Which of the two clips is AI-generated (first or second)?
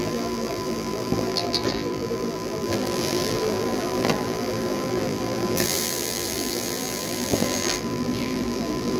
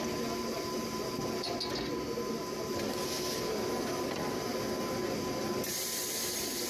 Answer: first